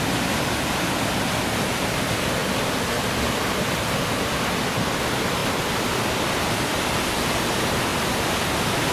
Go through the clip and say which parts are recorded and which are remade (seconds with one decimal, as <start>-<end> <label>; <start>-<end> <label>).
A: 0.0-8.9 recorded